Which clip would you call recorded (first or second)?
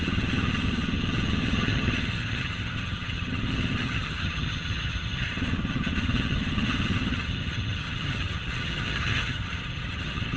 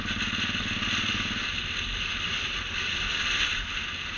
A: second